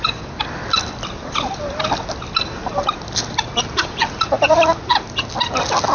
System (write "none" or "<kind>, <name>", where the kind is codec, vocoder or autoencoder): none